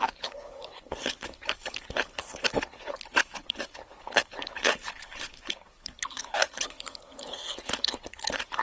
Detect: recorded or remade remade